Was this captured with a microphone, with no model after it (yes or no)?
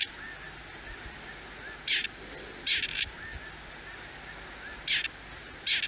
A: yes